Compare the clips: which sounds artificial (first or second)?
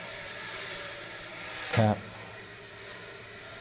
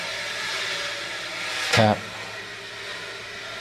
first